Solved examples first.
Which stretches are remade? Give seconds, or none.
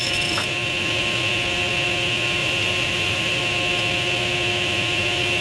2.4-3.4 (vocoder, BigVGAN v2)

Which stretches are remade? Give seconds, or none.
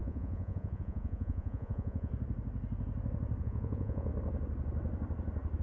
0.0-2.1 (vocoder, Vocos); 3.4-4.1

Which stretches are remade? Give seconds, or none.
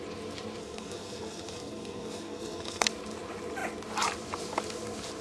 0.6-2.9 (codec, SNAC)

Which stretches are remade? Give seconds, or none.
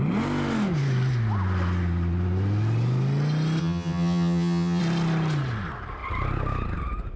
3.6-4.8 (vocoder, HiFi-GAN)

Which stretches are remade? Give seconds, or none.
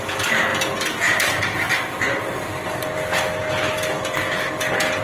none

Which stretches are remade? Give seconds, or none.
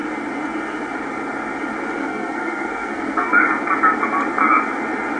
2.0-3.3 (codec, SNAC)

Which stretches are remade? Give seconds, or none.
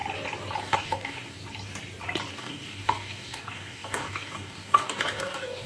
0.6-1.4 (codec, DAC); 2.3-5.7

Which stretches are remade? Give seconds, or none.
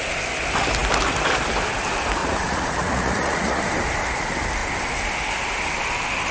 2.2-3.6 (vocoder, Vocos)